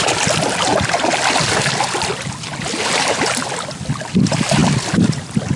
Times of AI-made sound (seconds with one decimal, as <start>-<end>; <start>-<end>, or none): none